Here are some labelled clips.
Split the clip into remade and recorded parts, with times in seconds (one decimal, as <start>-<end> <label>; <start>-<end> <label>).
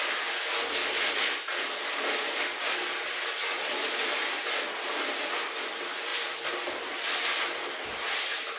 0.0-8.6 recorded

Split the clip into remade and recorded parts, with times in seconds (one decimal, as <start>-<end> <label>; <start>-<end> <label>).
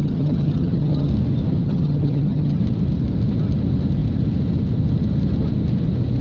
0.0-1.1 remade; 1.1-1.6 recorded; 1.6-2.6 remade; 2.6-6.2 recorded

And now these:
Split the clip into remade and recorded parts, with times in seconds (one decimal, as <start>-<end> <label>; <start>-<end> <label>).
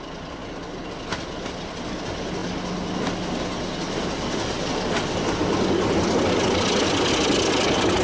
0.0-8.0 recorded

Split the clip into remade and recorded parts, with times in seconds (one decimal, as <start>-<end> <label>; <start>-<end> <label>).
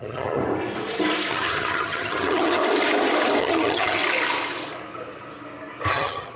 0.0-0.4 remade; 0.4-1.3 recorded; 1.3-2.6 remade; 2.6-3.4 recorded; 3.4-4.0 remade; 4.0-5.9 recorded; 5.9-6.4 remade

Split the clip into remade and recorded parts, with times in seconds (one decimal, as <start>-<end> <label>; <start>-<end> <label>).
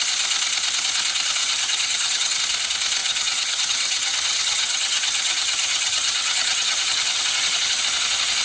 0.0-1.4 recorded; 1.4-2.4 remade; 2.4-3.0 recorded; 3.0-7.8 remade; 7.8-8.4 recorded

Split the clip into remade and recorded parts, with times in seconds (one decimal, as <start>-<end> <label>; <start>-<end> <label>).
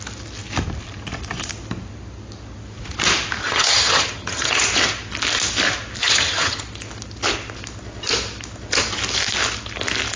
0.0-3.4 recorded; 3.4-4.6 remade; 4.6-6.0 recorded; 6.0-6.6 remade; 6.6-10.2 recorded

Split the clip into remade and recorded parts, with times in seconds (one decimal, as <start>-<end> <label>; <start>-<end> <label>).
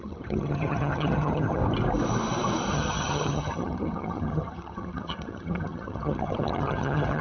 0.0-1.6 remade; 1.6-2.7 recorded; 2.7-7.2 remade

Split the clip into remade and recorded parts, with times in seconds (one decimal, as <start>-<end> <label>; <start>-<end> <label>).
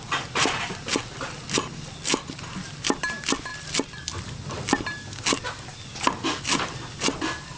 0.0-7.6 recorded